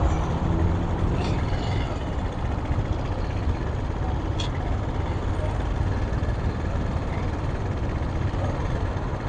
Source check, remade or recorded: recorded